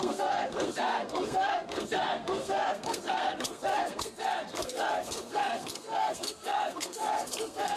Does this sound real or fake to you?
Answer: fake